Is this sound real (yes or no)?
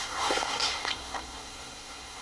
no